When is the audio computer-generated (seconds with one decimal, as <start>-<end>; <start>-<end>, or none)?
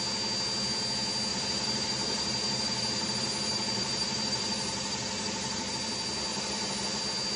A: 1.3-5.7; 6.3-7.0